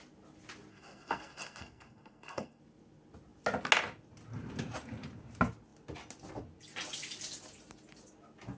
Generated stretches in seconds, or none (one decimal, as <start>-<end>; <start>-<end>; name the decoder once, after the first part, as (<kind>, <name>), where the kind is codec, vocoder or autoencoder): 0.7-2.6 (codec, SNAC)